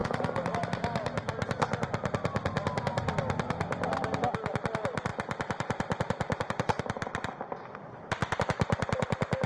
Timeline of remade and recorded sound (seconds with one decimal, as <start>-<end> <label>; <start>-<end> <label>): 0.0-8.2 recorded; 8.2-8.8 remade; 8.8-9.5 recorded